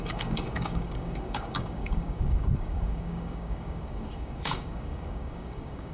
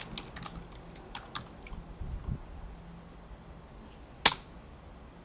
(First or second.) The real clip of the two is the second